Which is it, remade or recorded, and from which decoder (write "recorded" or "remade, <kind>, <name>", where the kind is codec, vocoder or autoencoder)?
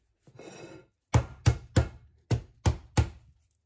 recorded